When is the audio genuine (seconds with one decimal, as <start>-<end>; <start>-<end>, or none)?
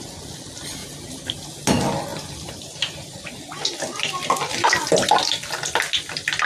0.0-0.8; 1.5-2.1; 3.6-4.5; 5.1-6.5